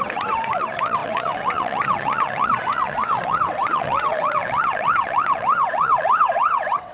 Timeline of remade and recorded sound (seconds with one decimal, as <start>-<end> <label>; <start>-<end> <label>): 0.0-6.9 remade